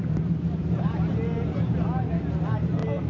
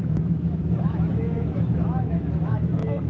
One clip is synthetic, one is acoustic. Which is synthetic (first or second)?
second